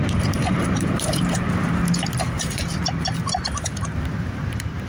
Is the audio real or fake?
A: fake